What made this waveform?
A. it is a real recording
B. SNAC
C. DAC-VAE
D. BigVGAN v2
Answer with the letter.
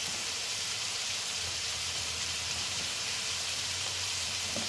D